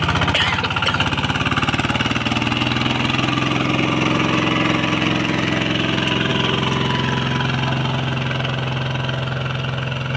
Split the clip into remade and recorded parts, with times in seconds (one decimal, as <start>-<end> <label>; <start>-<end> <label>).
0.0-10.2 recorded